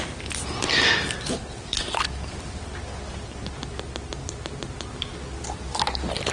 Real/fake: real